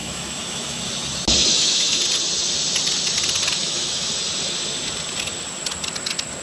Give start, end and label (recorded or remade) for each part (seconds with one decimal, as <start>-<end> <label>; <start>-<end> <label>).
0.0-0.8 remade; 0.8-1.4 recorded; 1.4-2.0 remade; 2.0-3.6 recorded; 3.6-4.1 remade; 4.1-6.4 recorded